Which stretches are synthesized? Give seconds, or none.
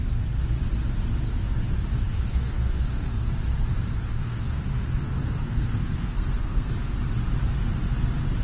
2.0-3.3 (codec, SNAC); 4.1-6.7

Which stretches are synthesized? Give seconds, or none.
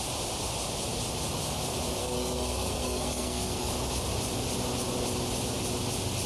2.0-3.7 (codec, SNAC)